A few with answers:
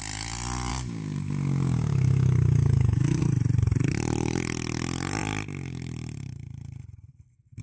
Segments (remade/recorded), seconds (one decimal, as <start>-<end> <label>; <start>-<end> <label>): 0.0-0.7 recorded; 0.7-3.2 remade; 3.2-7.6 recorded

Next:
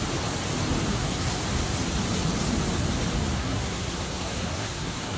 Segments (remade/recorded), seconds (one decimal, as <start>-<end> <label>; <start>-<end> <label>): 0.0-0.9 recorded; 0.9-1.4 remade; 1.4-3.4 recorded; 3.4-5.2 remade

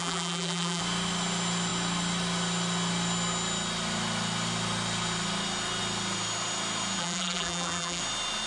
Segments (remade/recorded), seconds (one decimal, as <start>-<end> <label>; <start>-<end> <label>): 0.0-0.8 remade; 0.8-7.0 recorded; 7.0-8.0 remade; 8.0-8.5 recorded

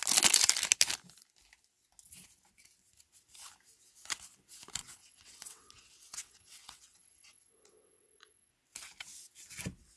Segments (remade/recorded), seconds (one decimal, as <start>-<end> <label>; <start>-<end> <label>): 0.0-4.8 recorded; 4.8-8.5 remade; 8.5-10.0 recorded

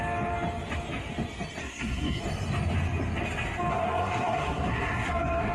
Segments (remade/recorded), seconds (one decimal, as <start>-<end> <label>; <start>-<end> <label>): 0.0-1.6 recorded; 1.6-2.2 remade; 2.2-3.7 recorded; 3.7-5.5 remade

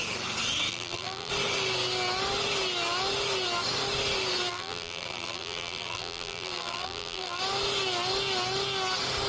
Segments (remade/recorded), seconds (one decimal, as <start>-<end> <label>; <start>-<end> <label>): 0.0-0.7 recorded; 0.7-1.3 remade; 1.3-4.5 recorded; 4.5-7.4 remade; 7.4-9.3 recorded

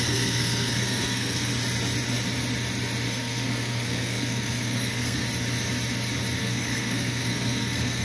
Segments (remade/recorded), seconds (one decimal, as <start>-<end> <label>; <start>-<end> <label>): 0.0-1.5 remade; 1.5-3.1 recorded; 3.1-5.2 remade; 5.2-6.4 recorded; 6.4-8.0 remade

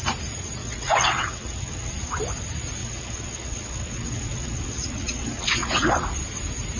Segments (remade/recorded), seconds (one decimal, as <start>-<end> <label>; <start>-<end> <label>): 0.0-0.6 recorded; 0.6-1.9 remade; 1.9-2.8 recorded; 2.8-5.9 remade; 5.9-6.8 recorded